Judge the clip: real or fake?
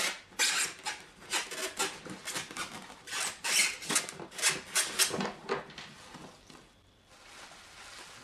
real